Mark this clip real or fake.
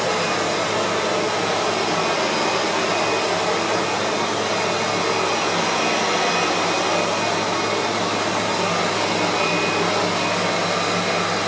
real